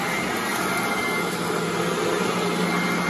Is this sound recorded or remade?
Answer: recorded